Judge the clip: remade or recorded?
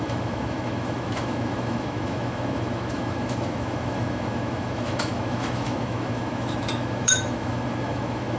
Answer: remade